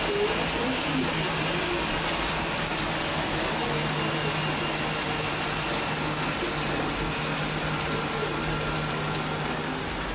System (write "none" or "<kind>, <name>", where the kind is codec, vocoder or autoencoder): none